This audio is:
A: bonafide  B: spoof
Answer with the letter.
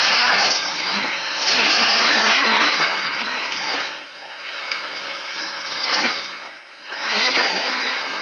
B